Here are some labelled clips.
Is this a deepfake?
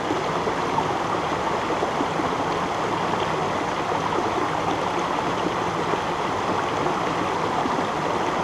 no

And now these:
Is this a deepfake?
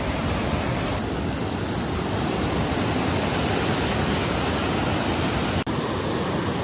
no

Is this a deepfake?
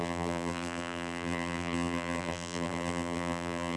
yes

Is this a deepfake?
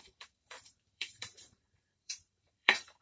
yes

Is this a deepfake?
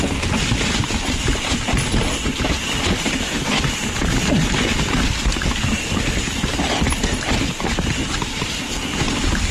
no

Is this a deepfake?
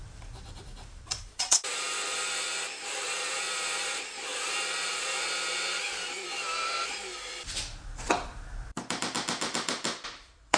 yes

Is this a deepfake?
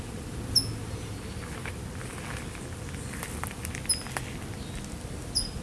no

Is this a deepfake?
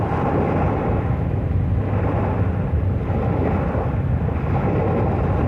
no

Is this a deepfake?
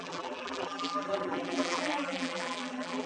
yes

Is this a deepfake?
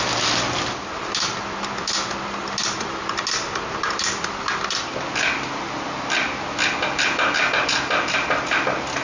no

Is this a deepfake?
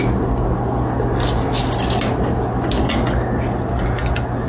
no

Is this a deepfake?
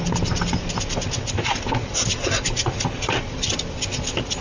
no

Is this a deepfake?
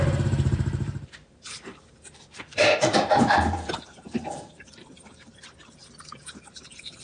yes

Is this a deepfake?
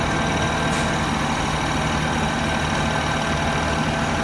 no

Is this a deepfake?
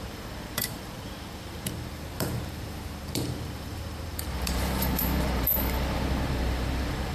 yes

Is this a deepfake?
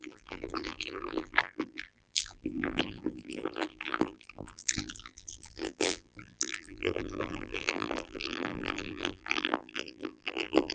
yes